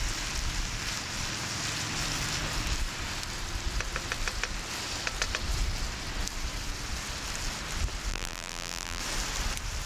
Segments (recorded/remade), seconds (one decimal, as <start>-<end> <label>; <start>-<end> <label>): 0.0-8.1 recorded; 8.1-9.0 remade; 9.0-9.9 recorded